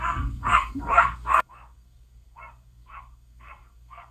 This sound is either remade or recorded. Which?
remade